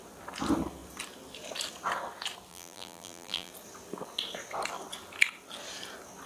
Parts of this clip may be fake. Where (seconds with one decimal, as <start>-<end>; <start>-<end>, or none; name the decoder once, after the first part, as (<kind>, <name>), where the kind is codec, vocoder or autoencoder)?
2.5-3.5 (vocoder, BigVGAN v2)